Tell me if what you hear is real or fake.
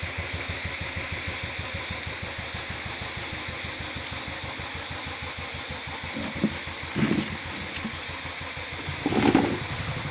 real